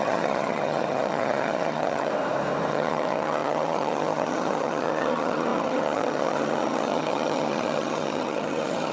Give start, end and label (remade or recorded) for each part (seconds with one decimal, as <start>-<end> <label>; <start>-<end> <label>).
0.0-2.1 remade; 2.1-2.7 recorded; 2.7-8.9 remade